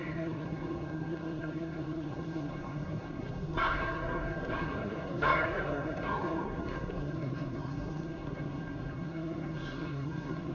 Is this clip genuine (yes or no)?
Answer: no